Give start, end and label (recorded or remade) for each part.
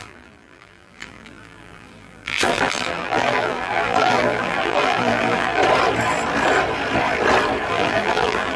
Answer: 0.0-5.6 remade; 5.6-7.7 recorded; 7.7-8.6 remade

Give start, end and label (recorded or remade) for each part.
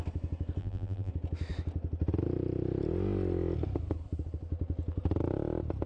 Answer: 0.0-0.6 recorded; 0.6-1.1 remade; 1.1-5.9 recorded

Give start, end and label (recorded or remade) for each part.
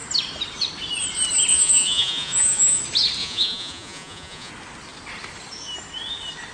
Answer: 0.0-1.5 recorded; 1.5-2.8 remade; 2.8-3.2 recorded; 3.2-4.5 remade; 4.5-6.5 recorded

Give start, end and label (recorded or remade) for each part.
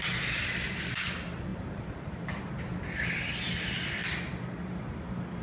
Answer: 0.0-1.5 recorded; 1.5-2.4 remade; 2.4-5.4 recorded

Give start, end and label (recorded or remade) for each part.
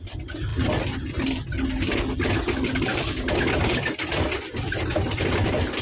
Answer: 0.0-0.5 recorded; 0.5-1.7 remade; 1.7-5.8 recorded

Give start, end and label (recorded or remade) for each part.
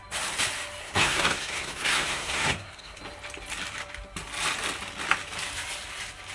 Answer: 0.0-0.8 recorded; 0.8-3.0 remade; 3.0-6.3 recorded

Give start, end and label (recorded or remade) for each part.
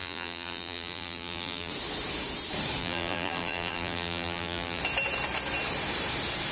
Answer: 0.0-1.7 remade; 1.7-2.8 recorded; 2.8-4.8 remade; 4.8-6.5 recorded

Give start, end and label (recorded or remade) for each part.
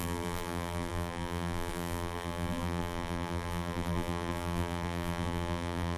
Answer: 0.0-6.0 remade